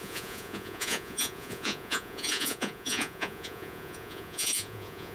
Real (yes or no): no